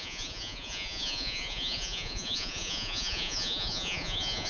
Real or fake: fake